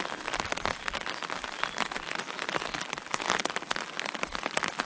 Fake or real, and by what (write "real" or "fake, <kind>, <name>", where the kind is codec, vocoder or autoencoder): real